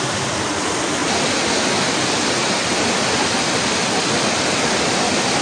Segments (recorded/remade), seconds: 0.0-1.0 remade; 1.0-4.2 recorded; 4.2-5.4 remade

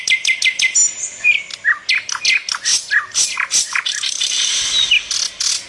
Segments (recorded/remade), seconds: 0.0-5.7 recorded

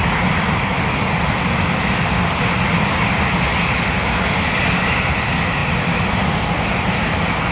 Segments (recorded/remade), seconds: 0.0-1.1 remade; 1.1-5.6 recorded; 5.6-6.2 remade; 6.2-7.5 recorded

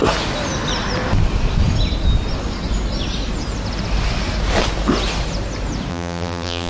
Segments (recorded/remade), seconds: 0.0-5.9 recorded; 5.9-6.7 remade

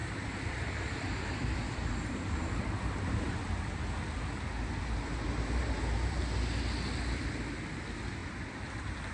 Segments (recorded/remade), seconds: 0.0-3.8 remade; 3.8-4.8 recorded; 4.8-6.2 remade; 6.2-8.2 recorded; 8.2-9.1 remade

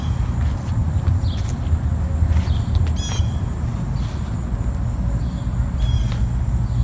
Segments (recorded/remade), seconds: 0.0-6.8 recorded

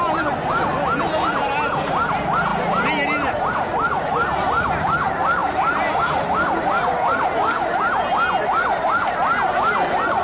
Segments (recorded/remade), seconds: 0.0-5.4 recorded; 5.4-6.0 remade; 6.0-10.2 recorded